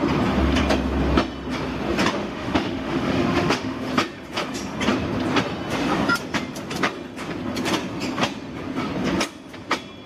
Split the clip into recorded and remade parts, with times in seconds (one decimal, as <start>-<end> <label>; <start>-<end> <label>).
0.0-2.2 recorded; 2.2-3.9 remade; 3.9-10.1 recorded